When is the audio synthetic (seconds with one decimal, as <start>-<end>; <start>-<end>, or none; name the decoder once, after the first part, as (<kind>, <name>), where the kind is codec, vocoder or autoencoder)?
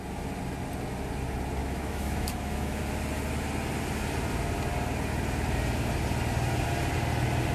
1.6-2.8 (autoencoder, DAC-VAE)